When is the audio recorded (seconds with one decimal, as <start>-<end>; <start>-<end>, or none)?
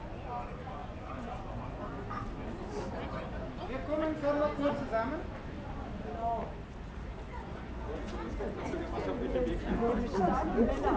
0.0-0.8; 1.4-7.3